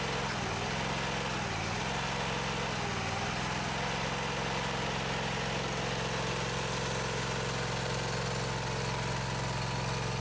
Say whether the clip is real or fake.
real